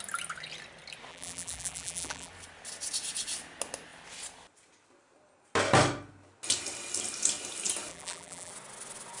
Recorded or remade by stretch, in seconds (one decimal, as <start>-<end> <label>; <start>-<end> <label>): 0.0-1.1 recorded; 1.1-2.3 remade; 2.3-7.9 recorded; 7.9-8.5 remade; 8.5-9.2 recorded